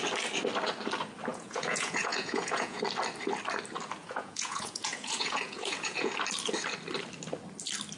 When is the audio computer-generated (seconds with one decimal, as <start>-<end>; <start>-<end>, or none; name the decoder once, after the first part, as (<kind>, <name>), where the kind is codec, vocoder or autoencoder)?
1.3-2.8 (vocoder, Vocos); 4.0-6.1